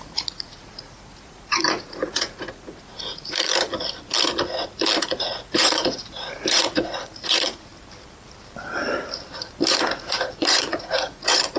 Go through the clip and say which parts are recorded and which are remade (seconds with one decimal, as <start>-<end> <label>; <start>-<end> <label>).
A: 0.0-3.5 remade; 3.5-5.1 recorded; 5.1-7.7 remade; 7.7-9.7 recorded; 9.7-11.6 remade